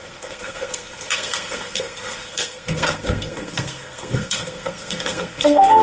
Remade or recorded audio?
remade